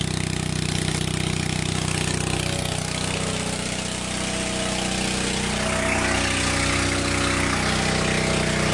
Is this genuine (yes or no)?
yes